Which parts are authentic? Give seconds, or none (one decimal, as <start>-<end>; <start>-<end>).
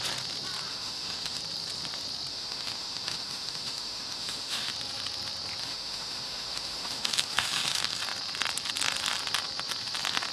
0.0-0.7; 1.4-2.3; 4.7-5.6; 8.0-10.3